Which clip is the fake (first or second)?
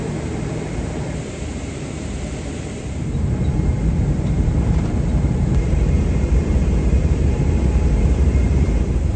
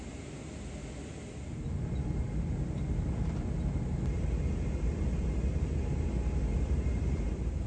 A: first